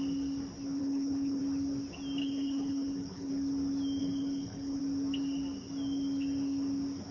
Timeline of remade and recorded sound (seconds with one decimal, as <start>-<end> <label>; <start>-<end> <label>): 0.0-0.8 recorded; 0.8-1.4 remade; 1.4-2.2 recorded; 2.2-3.3 remade; 3.3-4.0 recorded; 4.0-4.8 remade; 4.8-7.1 recorded